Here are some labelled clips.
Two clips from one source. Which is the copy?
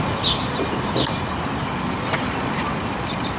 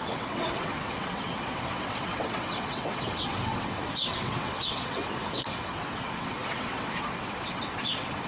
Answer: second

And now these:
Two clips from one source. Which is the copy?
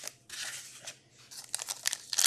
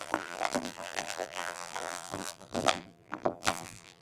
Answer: second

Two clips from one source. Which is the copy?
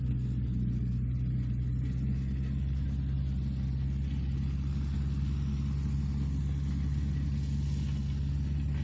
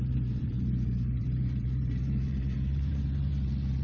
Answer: second